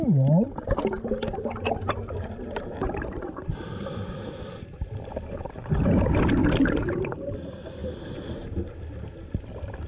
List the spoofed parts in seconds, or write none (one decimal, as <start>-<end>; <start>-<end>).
1.3-5.7; 7.8-8.8